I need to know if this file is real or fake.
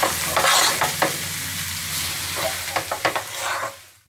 real